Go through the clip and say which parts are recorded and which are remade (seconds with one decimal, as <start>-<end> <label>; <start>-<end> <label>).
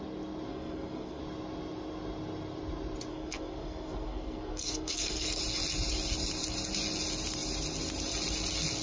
0.0-0.5 recorded; 0.5-1.2 remade; 1.2-3.1 recorded; 3.1-5.4 remade; 5.4-8.8 recorded